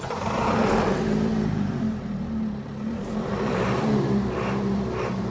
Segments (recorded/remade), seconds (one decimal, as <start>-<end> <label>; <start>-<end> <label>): 0.0-5.3 remade